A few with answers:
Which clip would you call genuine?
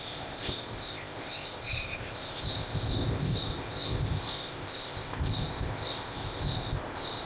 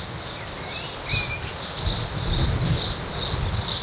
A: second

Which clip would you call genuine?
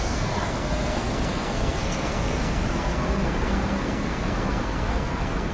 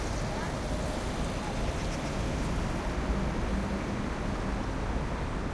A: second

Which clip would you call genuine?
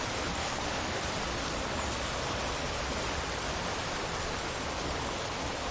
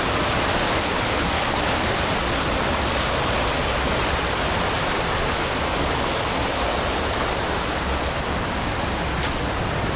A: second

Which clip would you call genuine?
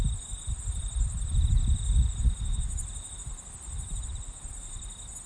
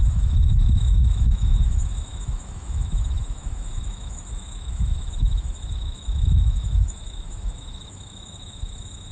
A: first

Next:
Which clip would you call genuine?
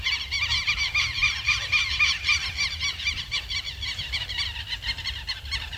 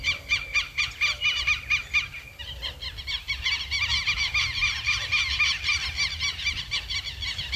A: second